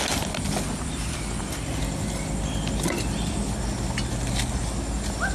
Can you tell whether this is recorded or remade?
recorded